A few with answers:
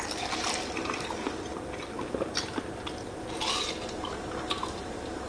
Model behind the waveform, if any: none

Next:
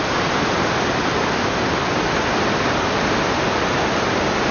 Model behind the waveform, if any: none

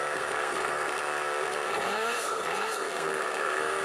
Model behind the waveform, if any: codec, SNAC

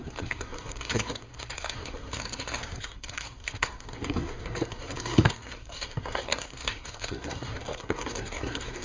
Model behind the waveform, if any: codec, SNAC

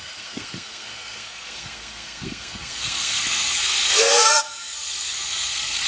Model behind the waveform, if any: codec, SNAC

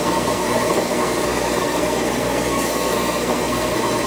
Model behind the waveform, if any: codec, SNAC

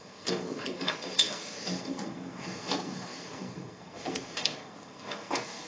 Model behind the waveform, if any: codec, SNAC